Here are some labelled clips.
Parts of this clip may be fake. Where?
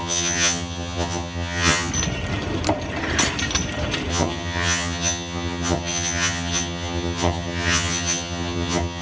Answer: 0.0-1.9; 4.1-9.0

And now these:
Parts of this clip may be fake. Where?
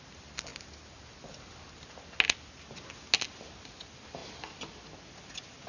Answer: none